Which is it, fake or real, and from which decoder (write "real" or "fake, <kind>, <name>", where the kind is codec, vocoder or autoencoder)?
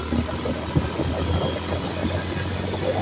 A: real